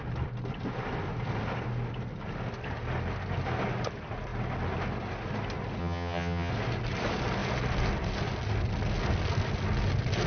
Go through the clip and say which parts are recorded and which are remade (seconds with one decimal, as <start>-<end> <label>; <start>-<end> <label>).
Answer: 0.0-5.8 recorded; 5.8-6.5 remade; 6.5-10.3 recorded